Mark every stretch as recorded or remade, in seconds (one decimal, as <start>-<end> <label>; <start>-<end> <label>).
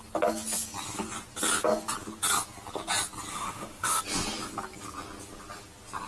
0.0-3.3 recorded; 3.3-4.0 remade; 4.0-6.1 recorded